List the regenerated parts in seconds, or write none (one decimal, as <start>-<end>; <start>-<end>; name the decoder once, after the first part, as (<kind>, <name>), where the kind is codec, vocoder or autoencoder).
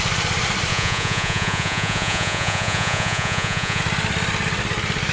0.7-3.8 (vocoder, Vocos)